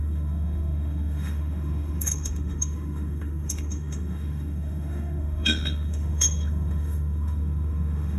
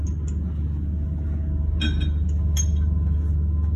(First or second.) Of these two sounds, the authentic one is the second